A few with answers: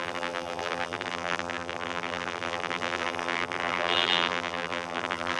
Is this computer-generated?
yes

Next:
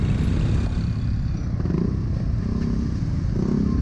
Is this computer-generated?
no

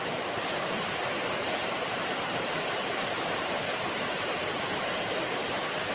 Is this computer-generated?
yes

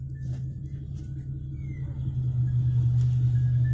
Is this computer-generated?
no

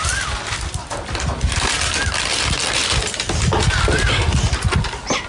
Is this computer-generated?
no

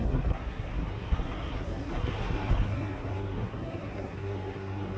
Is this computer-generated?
yes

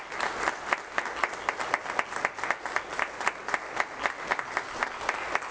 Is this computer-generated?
no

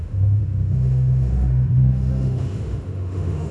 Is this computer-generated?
yes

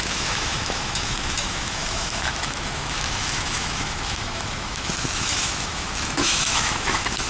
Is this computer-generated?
yes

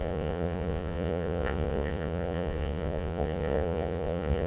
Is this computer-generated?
yes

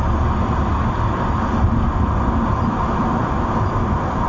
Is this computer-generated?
no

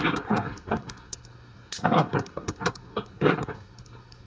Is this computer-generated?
yes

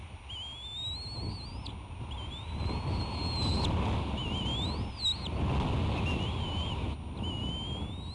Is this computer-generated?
no